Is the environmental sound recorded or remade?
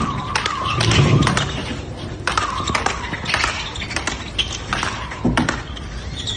recorded